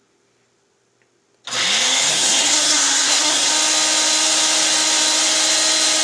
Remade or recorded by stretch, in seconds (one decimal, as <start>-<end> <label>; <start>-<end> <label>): 0.0-2.1 recorded; 2.1-3.5 remade; 3.5-6.0 recorded